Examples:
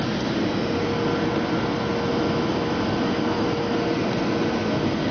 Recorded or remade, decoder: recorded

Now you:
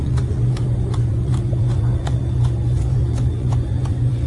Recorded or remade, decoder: remade, vocoder, Vocos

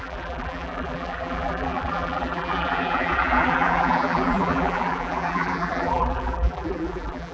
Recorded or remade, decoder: remade, vocoder, BigVGAN v2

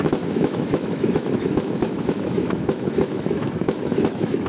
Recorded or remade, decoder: remade, autoencoder, DAC-VAE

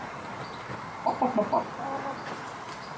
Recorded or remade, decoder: recorded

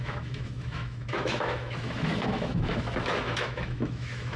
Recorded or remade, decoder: remade, autoencoder, DAC-VAE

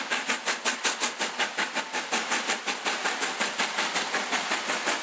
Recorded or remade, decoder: recorded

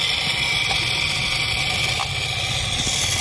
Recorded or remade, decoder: recorded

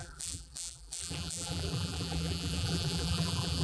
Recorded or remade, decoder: remade, vocoder, BigVGAN v2